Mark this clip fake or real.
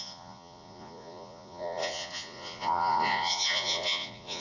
fake